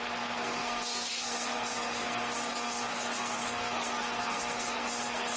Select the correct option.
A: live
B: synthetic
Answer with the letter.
B